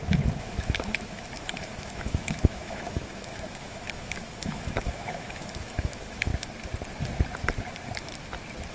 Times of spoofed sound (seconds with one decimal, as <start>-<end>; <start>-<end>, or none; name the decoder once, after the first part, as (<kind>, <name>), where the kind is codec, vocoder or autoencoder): 0.0-6.3 (autoencoder, DAC-VAE)